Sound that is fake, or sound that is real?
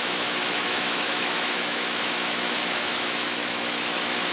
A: fake